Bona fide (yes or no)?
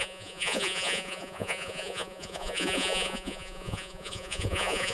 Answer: no